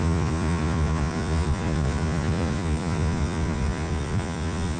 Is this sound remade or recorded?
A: remade